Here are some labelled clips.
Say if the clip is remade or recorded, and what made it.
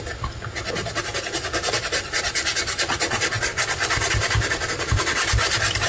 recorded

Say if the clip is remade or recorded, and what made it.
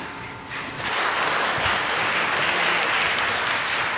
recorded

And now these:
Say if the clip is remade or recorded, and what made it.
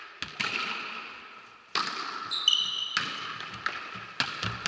recorded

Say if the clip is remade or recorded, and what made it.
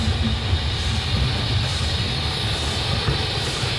recorded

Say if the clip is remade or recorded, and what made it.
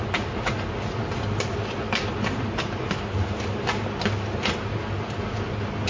recorded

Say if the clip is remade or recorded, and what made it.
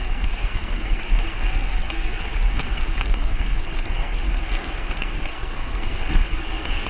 remade, codec, SNAC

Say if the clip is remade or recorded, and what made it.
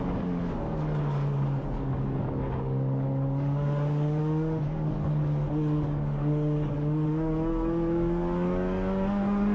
remade, codec, DAC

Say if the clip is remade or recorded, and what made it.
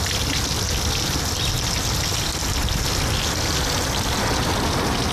recorded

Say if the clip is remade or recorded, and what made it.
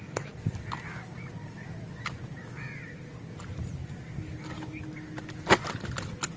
recorded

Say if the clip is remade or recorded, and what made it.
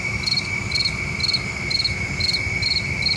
recorded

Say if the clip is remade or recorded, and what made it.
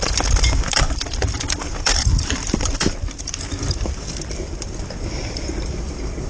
remade, vocoder, BigVGAN v2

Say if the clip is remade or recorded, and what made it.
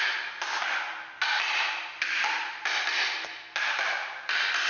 recorded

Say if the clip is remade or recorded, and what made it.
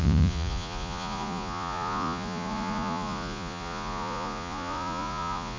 remade, vocoder, Vocos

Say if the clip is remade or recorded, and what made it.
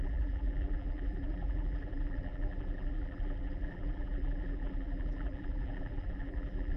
remade, vocoder, BigVGAN v2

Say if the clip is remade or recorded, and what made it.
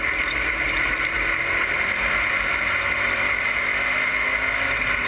recorded